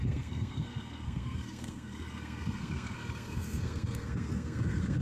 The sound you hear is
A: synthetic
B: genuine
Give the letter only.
A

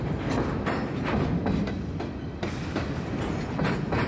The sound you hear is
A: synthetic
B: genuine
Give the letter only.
B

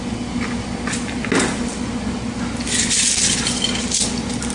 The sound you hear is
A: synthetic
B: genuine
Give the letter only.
B